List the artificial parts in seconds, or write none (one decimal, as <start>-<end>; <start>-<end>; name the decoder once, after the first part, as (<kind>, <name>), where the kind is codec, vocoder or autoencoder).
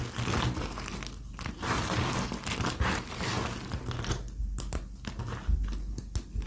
none